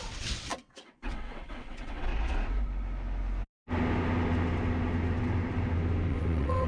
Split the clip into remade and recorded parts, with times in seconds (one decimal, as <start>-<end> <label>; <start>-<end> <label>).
0.0-2.1 remade; 2.1-6.1 recorded; 6.1-6.7 remade